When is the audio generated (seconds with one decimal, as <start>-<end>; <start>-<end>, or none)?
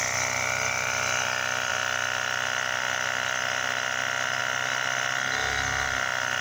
none